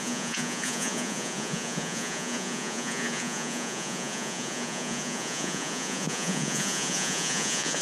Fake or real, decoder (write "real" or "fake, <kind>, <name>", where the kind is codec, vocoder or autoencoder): fake, vocoder, Vocos